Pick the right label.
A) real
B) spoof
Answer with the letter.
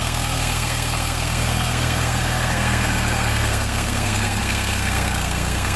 B